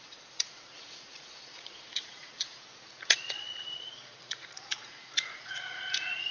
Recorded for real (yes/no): no